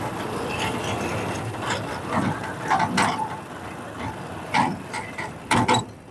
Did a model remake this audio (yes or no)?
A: no